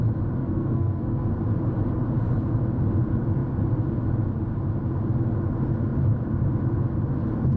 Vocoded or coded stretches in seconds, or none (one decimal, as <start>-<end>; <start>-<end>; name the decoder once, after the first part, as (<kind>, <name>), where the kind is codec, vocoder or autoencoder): 0.4-1.3 (codec, SNAC)